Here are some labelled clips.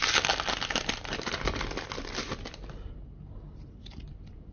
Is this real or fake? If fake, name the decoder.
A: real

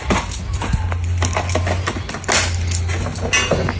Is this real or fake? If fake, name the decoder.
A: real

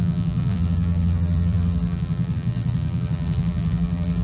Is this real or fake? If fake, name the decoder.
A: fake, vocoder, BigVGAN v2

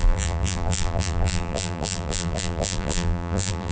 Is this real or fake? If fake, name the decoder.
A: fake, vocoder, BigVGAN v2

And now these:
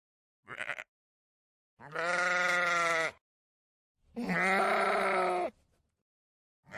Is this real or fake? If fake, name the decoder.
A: real